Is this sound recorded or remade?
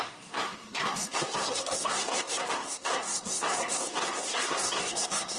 remade